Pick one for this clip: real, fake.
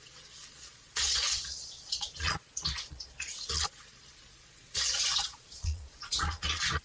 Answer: fake